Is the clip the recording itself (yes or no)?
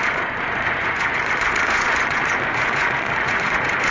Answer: no